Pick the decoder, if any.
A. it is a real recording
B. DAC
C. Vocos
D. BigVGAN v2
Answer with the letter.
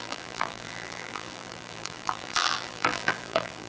D